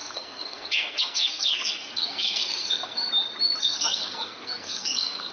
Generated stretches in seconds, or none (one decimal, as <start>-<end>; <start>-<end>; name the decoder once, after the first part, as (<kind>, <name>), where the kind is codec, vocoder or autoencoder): 0.0-3.1 (codec, SNAC); 3.6-5.3